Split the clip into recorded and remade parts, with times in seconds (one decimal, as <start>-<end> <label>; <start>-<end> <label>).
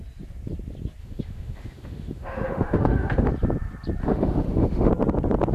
0.0-1.0 recorded; 1.0-3.3 remade; 3.3-4.0 recorded; 4.0-4.9 remade; 4.9-5.5 recorded